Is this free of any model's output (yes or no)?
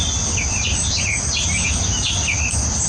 yes